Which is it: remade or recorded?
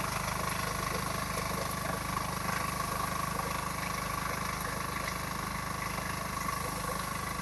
recorded